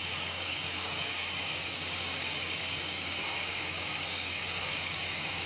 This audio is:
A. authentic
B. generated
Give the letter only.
B